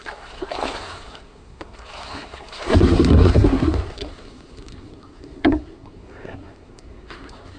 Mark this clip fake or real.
fake